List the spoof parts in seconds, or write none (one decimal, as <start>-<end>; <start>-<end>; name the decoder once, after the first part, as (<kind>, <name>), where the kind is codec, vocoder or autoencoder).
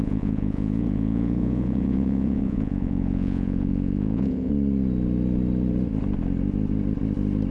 0.0-4.5 (vocoder, Vocos)